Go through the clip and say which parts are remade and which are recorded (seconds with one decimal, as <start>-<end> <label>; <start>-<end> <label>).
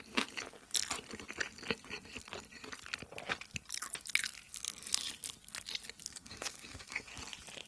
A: 0.0-6.0 recorded; 6.0-7.1 remade; 7.1-7.7 recorded